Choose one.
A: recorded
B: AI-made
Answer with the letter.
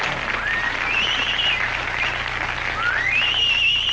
A